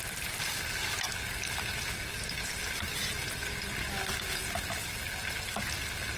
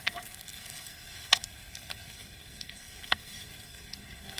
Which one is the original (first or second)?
first